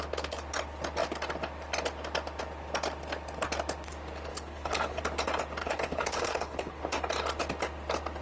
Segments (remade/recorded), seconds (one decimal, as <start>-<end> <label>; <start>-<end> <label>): 0.0-4.3 recorded; 4.3-5.0 remade; 5.0-5.6 recorded; 5.6-6.8 remade; 6.8-8.2 recorded